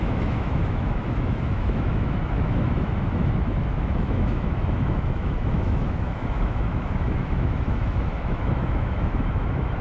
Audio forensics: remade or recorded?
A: remade